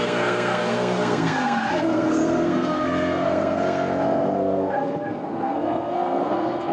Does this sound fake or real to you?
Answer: fake